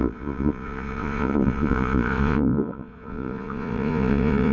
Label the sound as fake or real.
fake